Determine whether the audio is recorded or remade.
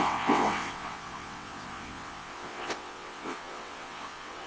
remade